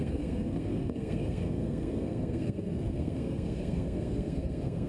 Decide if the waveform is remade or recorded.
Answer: remade